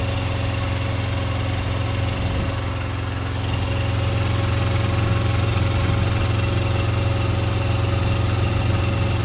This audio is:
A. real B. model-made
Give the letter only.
A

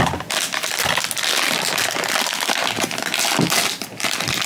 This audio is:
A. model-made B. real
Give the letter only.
B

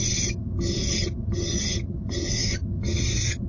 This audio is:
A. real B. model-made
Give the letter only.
B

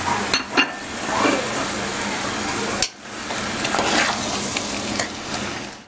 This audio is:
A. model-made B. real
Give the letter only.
B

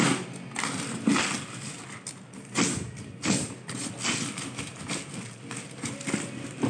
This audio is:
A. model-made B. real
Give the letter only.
B